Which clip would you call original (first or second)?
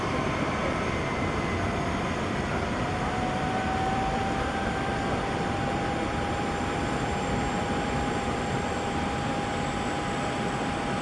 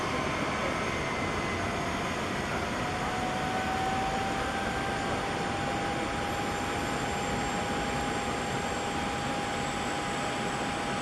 second